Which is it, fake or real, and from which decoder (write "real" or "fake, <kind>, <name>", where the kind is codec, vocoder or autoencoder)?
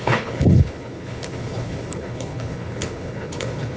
fake, codec, HILCodec